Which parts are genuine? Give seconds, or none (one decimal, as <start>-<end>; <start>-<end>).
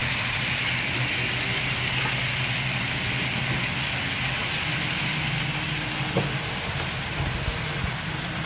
0.6-8.5